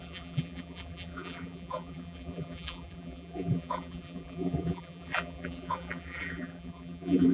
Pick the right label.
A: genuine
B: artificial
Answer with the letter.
B